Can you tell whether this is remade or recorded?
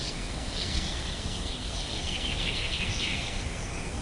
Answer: remade